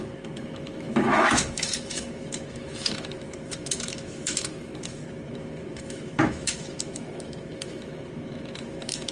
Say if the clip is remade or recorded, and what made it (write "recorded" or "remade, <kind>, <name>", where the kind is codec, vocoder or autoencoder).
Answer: remade, autoencoder, DAC-VAE